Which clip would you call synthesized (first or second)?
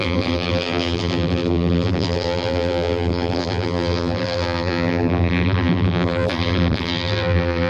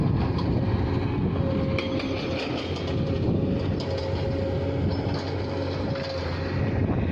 first